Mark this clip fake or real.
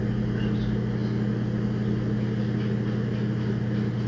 real